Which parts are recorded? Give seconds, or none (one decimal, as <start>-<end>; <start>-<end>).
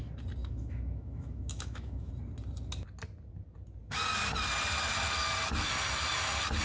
0.0-0.4; 2.1-6.6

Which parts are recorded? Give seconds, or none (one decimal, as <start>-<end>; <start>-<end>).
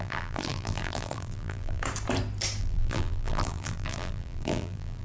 1.8-2.6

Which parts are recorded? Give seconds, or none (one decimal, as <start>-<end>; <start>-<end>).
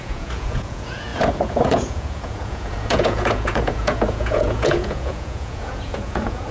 none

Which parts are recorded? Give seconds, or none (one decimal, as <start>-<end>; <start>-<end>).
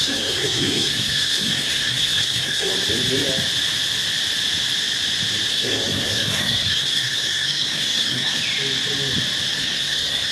2.7-5.5; 8.4-9.5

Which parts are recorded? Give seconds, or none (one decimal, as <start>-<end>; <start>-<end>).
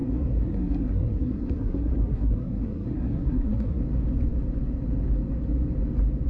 3.8-6.3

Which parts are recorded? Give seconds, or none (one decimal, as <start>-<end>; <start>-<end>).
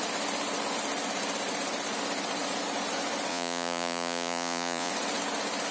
0.0-3.3; 4.9-5.7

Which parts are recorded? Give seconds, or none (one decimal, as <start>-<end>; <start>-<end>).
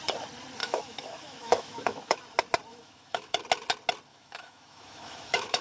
0.0-0.6; 2.2-2.7; 3.4-4.1